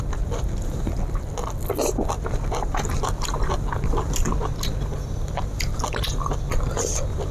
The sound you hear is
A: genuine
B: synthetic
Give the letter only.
A